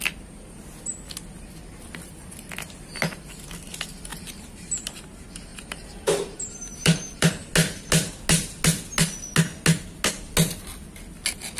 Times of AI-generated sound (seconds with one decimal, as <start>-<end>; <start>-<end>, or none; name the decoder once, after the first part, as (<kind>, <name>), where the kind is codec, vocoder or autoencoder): 4.1-5.0 (vocoder, BigVGAN v2); 5.5-7.3